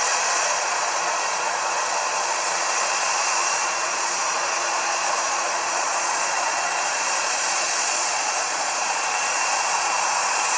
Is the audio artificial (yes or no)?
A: yes